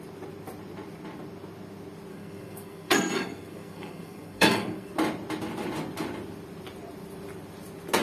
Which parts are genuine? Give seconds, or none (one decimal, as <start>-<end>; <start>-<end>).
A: 0.0-2.1; 4.9-8.0